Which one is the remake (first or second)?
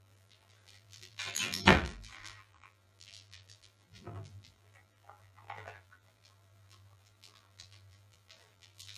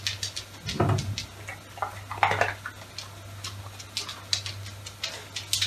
first